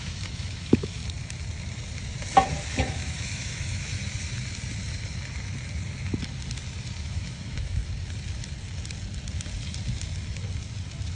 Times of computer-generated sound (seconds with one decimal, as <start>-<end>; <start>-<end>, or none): 0.0-1.0; 2.7-4.0; 7.0-7.8